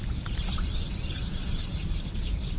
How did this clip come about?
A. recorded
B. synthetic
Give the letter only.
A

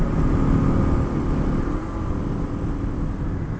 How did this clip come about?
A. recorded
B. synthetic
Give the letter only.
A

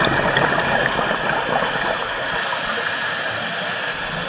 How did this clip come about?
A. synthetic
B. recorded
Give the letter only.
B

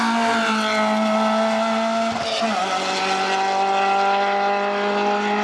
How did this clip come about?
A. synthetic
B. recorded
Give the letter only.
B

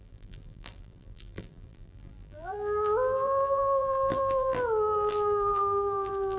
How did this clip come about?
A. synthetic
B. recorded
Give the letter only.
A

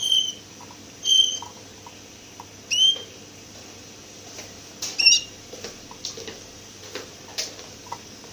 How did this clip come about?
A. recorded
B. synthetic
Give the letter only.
A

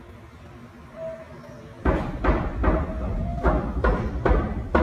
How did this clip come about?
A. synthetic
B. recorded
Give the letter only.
B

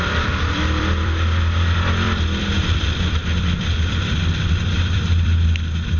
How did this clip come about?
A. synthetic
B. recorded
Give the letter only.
A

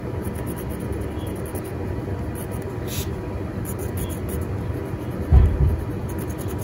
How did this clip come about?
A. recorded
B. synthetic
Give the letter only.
A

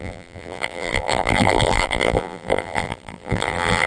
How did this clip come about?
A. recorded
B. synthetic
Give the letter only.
B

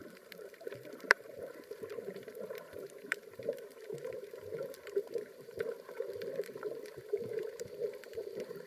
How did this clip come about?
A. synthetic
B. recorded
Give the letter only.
A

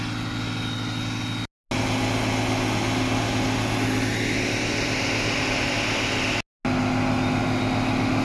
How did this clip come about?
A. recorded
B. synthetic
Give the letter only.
A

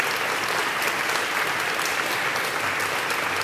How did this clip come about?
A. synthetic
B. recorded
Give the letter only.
B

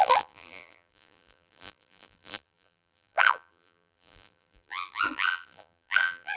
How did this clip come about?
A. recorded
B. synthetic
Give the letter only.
B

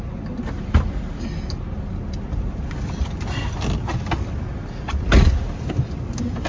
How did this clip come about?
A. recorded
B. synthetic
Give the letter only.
A